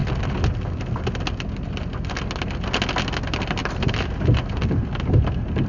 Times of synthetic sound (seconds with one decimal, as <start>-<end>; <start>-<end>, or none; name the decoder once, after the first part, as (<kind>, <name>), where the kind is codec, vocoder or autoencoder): none